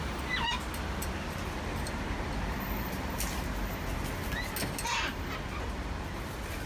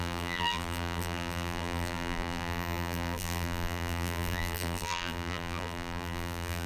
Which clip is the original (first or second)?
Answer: first